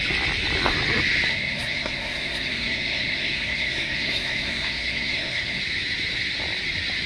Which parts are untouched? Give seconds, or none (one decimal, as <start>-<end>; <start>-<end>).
0.0-1.3; 5.6-7.1